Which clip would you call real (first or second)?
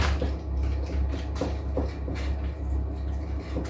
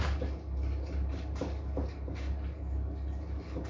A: first